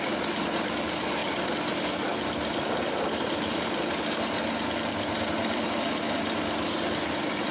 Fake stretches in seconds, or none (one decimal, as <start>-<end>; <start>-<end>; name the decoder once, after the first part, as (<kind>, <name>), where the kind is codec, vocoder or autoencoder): none